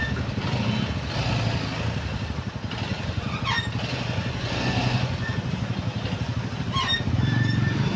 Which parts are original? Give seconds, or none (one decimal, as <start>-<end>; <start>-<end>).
0.0-2.9; 3.5-3.9; 5.5-8.0